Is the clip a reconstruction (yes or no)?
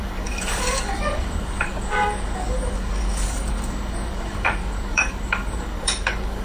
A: yes